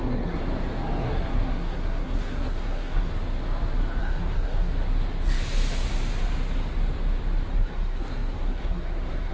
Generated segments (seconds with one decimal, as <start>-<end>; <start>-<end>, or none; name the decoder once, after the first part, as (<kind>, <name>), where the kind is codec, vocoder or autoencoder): 0.0-0.4 (codec, SNAC); 1.0-3.1; 4.0-4.7; 7.5-9.3